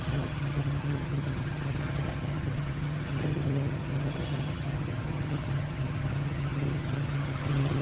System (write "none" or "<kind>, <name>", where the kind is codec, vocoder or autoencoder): vocoder, HiFi-GAN